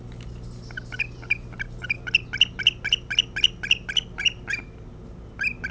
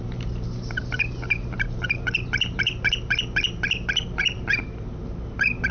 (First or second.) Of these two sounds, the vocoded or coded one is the second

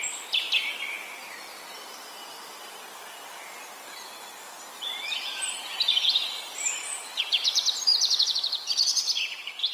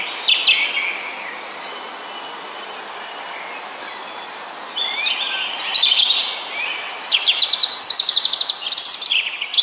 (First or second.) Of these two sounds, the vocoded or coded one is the first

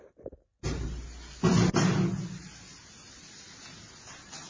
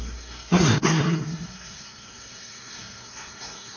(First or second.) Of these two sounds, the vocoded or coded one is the second